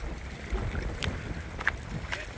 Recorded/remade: recorded